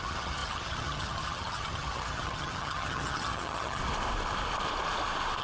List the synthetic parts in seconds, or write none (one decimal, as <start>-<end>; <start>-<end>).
0.0-3.8